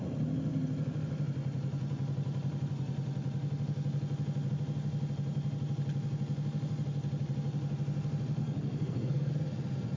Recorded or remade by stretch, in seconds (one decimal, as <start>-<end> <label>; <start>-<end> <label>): 0.0-8.4 recorded; 8.4-9.3 remade; 9.3-10.0 recorded